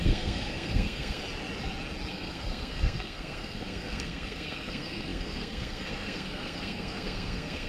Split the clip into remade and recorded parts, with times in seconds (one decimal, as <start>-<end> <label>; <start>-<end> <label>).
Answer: 0.0-1.2 remade; 1.2-2.1 recorded; 2.1-7.7 remade